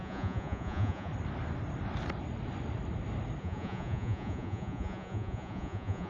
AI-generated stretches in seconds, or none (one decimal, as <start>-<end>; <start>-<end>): 0.0-1.1; 3.4-6.1